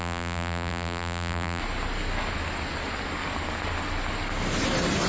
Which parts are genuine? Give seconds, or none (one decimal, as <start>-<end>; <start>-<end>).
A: 1.6-5.1